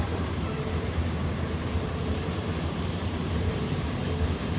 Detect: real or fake fake